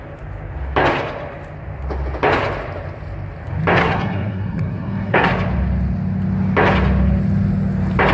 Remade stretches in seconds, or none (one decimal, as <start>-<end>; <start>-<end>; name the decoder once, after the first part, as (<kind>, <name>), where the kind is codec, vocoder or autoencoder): 3.8-5.3 (codec, SNAC)